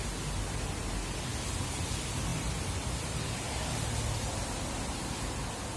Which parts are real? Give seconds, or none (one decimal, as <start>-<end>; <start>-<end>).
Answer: 0.0-5.8

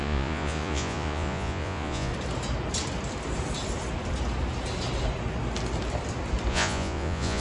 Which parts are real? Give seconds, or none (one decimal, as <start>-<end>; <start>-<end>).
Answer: 2.1-6.5

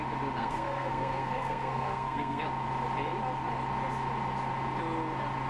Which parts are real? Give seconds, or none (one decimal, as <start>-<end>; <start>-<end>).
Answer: 0.0-0.4; 2.4-5.5

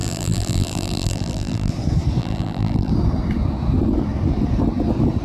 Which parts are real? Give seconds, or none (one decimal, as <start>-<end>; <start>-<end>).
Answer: 1.7-2.2; 2.9-5.2

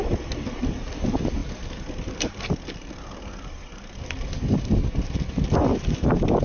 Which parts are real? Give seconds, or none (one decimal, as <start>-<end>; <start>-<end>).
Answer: 0.0-6.4

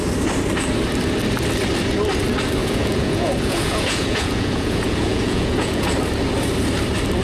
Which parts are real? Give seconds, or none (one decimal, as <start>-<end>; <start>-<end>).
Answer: 0.0-2.6; 5.9-7.2

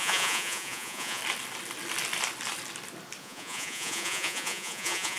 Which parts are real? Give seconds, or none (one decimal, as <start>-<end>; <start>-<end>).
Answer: 1.2-3.2

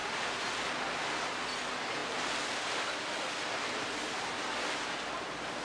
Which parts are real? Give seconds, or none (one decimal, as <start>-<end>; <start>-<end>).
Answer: 0.6-5.6